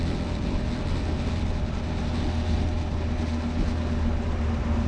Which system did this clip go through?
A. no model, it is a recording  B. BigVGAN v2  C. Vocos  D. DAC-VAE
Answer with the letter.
A